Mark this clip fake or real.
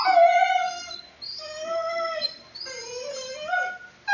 real